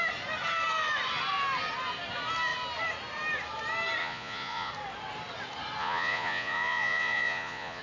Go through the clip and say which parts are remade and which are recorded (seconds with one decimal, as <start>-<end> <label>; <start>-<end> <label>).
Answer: 0.0-4.0 recorded; 4.0-4.7 remade; 4.7-5.8 recorded; 5.8-7.8 remade